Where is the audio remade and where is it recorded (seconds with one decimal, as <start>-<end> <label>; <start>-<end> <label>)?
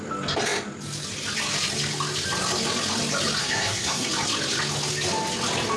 0.0-3.4 recorded; 3.4-4.1 remade; 4.1-5.8 recorded